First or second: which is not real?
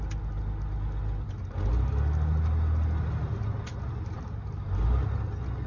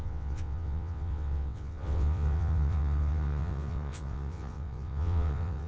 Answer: second